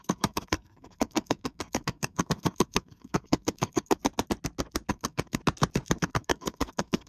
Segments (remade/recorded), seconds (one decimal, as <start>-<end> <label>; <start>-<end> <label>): 0.0-4.0 remade; 4.0-4.9 recorded; 4.9-5.4 remade; 5.4-6.0 recorded; 6.0-7.1 remade